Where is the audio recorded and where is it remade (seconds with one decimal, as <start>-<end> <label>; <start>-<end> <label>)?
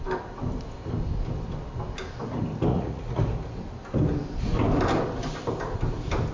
0.0-2.7 recorded; 2.7-3.2 remade; 3.2-6.3 recorded